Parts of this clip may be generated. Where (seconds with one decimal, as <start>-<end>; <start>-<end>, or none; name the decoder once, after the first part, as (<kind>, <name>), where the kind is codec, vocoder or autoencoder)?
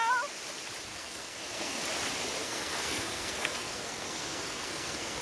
0.9-1.8 (codec, SNAC); 2.4-5.2